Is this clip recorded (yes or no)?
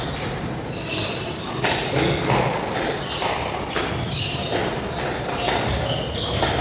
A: yes